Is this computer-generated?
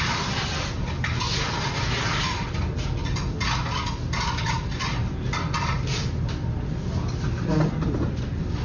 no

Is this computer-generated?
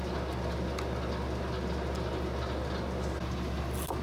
no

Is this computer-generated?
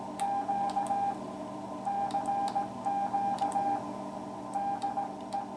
no